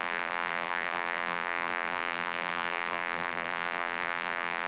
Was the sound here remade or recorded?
remade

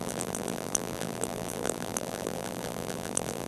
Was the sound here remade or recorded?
remade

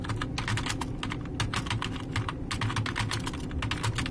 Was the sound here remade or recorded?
recorded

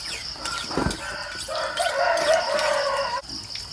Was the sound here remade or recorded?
recorded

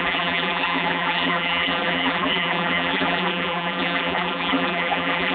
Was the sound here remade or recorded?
remade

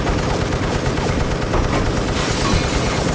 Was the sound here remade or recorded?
recorded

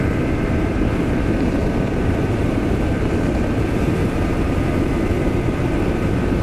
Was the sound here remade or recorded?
remade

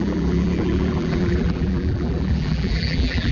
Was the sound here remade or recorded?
remade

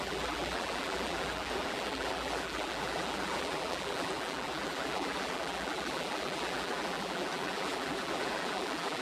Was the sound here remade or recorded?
remade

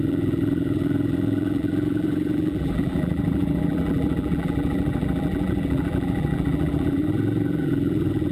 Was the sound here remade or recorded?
remade